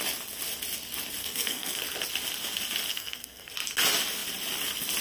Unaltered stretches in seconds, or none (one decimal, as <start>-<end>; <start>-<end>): 0.0-1.2; 1.8-2.9; 3.5-5.0